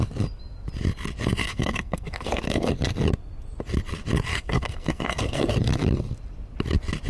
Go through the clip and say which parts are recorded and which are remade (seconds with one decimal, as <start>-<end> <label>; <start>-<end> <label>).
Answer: 0.0-1.4 recorded; 1.4-2.7 remade; 2.7-4.3 recorded; 4.3-5.5 remade; 5.5-7.1 recorded